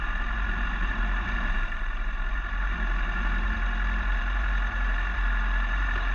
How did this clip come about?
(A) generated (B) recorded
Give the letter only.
A